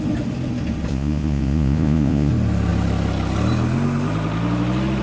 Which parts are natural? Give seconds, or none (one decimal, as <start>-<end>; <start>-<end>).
0.0-0.9; 2.3-5.0